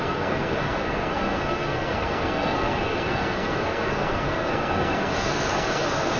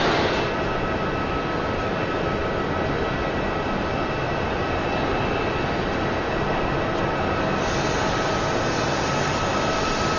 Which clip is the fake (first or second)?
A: first